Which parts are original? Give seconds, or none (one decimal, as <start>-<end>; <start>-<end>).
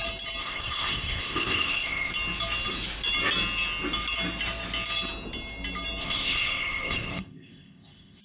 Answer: 0.0-0.4; 2.1-6.0